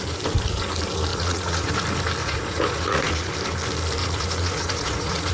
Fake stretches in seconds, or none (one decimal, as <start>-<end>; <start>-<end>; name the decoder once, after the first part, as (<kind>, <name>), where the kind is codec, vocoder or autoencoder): 1.1-1.7 (vocoder, Vocos); 2.2-3.3; 4.0-5.3